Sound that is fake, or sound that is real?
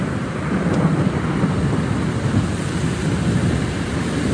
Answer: real